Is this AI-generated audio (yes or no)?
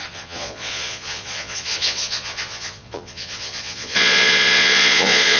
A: yes